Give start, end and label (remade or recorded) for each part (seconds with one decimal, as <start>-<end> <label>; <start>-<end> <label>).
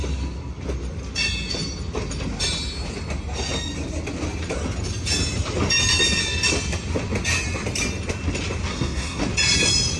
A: 0.0-8.7 recorded; 8.7-9.2 remade; 9.2-10.0 recorded